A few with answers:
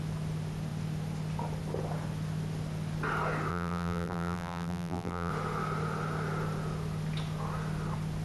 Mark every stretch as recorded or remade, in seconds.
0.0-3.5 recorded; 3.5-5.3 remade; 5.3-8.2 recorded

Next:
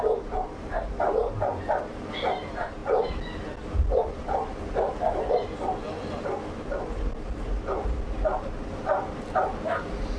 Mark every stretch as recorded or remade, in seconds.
0.0-10.2 recorded

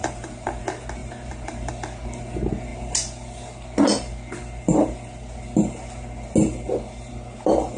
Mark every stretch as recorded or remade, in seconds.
0.0-0.6 remade; 0.6-1.0 recorded; 1.0-1.7 remade; 1.7-7.8 recorded

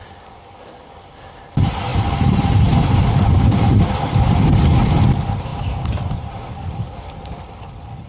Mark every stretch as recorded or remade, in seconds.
0.0-1.9 recorded; 1.9-5.0 remade; 5.0-5.5 recorded; 5.5-6.6 remade; 6.6-8.1 recorded

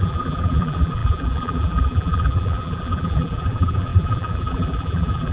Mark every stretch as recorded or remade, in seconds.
0.0-5.3 remade